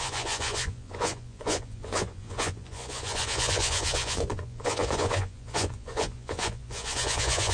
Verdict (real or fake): fake